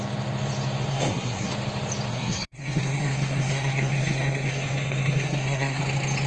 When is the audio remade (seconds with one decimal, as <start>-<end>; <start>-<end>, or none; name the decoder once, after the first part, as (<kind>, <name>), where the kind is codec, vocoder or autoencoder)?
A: 0.9-1.5 (codec, SNAC); 2.1-5.8